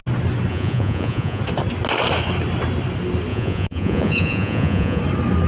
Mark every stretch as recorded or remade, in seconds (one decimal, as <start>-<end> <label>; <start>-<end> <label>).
0.0-0.5 recorded; 0.5-1.4 remade; 1.4-3.3 recorded; 3.3-5.0 remade; 5.0-5.5 recorded